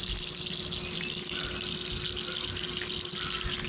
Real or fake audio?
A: real